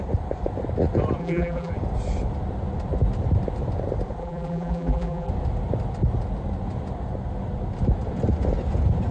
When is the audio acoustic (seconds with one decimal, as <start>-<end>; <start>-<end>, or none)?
0.0-1.2; 1.7-4.2; 5.3-9.1